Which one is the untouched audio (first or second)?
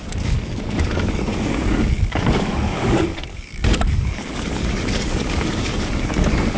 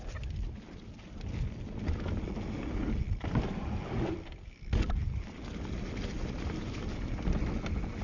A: second